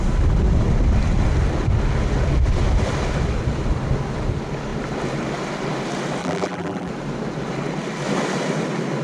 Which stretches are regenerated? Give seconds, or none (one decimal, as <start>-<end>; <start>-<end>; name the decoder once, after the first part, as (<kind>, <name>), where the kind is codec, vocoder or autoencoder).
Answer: 6.2-6.9 (vocoder, BigVGAN v2)

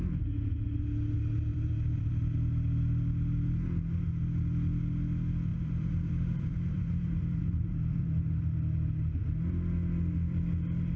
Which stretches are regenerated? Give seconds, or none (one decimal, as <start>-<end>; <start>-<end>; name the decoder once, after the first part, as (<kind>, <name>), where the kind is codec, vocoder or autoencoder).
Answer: 1.5-2.1 (vocoder, BigVGAN v2); 5.5-8.4

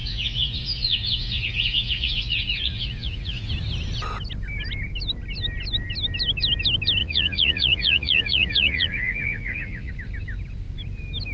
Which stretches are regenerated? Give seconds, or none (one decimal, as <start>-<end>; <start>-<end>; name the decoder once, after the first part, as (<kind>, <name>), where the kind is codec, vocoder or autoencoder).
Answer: 0.0-3.5 (vocoder, Vocos); 7.0-9.9